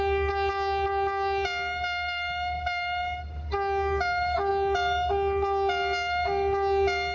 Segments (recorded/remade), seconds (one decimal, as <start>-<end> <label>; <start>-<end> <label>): 0.0-7.1 recorded